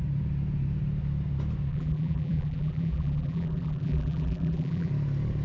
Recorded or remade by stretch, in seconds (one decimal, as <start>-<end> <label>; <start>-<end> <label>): 0.0-1.7 recorded; 1.7-4.9 remade; 4.9-5.4 recorded